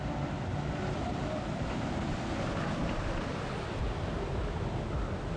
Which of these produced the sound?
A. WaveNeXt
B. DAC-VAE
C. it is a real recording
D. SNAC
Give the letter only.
C